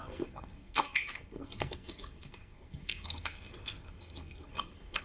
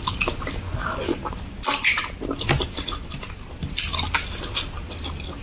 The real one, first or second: second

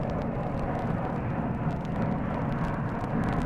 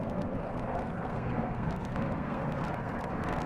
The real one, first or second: first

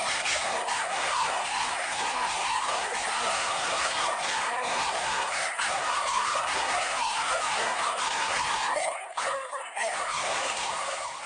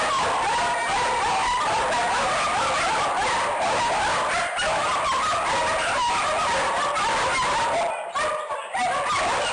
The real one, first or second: second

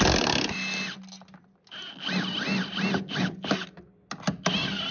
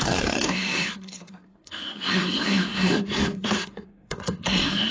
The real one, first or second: first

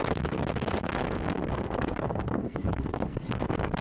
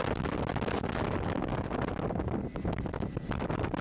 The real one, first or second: second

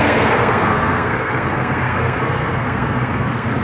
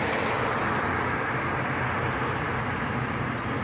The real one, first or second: second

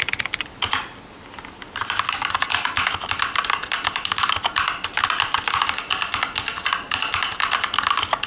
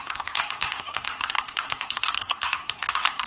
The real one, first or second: first